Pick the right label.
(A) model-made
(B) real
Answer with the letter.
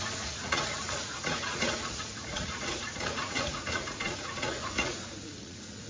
A